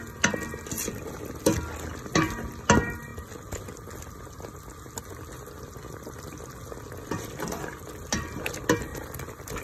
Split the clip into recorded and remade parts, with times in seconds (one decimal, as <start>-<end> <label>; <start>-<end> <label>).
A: 0.0-9.6 recorded